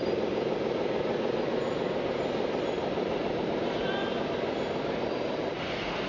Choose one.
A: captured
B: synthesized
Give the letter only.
A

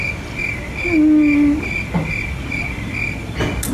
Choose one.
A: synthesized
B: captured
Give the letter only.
B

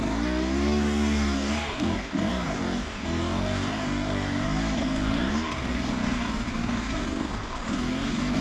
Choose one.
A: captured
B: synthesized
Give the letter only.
B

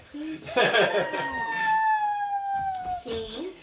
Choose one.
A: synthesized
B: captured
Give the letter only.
A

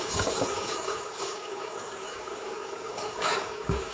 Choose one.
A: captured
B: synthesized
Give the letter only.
B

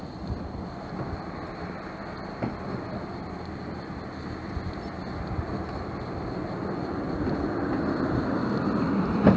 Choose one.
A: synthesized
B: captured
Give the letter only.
B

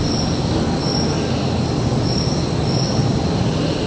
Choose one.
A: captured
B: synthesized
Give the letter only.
A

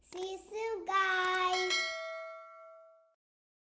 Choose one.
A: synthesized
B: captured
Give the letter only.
B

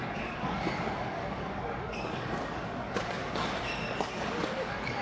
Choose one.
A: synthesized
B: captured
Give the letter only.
A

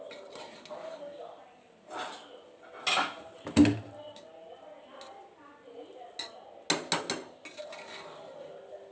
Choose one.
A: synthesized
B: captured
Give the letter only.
B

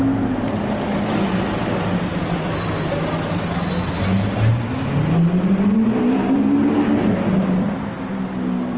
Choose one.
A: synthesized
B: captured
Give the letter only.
B